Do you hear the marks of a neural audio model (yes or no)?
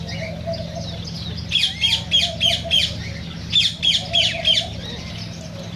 no